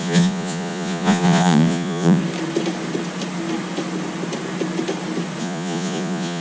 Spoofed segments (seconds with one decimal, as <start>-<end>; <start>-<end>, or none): 0.0-2.2; 5.4-6.4